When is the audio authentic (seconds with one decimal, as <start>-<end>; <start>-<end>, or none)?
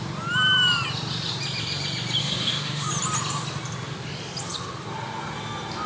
0.0-2.2; 2.9-5.9